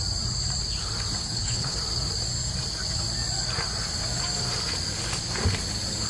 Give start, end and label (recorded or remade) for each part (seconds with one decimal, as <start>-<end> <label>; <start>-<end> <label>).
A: 0.0-1.2 recorded; 1.2-1.8 remade; 1.8-6.1 recorded